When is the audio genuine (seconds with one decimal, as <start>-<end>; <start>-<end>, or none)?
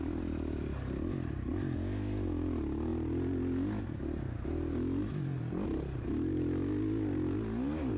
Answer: 0.0-8.0